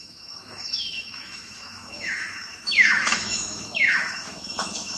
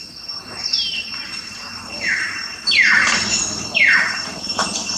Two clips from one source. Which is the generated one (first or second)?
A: first